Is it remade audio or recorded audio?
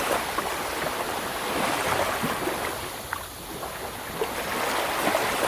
recorded